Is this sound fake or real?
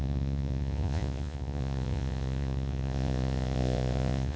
fake